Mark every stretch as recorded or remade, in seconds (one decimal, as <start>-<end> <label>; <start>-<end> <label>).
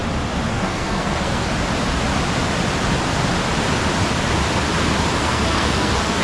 0.0-0.5 recorded; 0.5-1.5 remade; 1.5-5.2 recorded; 5.2-6.2 remade